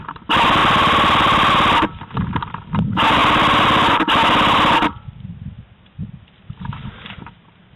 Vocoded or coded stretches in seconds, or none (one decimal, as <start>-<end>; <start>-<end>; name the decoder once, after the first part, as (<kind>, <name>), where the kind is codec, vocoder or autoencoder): none